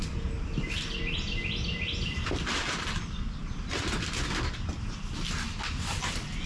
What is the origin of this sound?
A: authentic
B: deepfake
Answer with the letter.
A